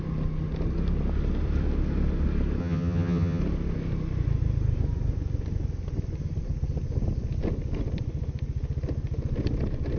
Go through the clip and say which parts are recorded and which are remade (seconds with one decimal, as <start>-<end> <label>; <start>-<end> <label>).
0.0-2.6 recorded; 2.6-3.4 remade; 3.4-10.0 recorded